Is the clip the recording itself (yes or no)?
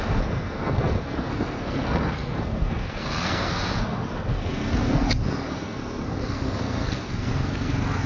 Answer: no